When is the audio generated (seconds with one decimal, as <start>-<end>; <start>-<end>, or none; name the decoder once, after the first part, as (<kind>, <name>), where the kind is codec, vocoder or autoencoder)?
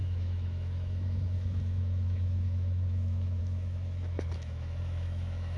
0.0-5.6 (autoencoder, DAC-VAE)